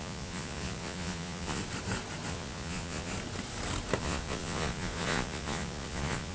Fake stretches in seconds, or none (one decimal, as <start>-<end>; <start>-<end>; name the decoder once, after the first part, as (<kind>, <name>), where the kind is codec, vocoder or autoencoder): 0.0-1.6 (vocoder, Vocos); 2.3-3.1; 4.0-6.3